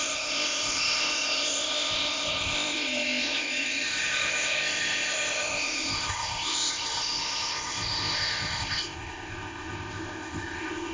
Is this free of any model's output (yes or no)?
no